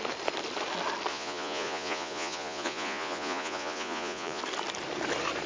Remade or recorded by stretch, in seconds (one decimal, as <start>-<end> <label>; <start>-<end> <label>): 0.0-1.1 recorded; 1.1-4.4 remade; 4.4-5.5 recorded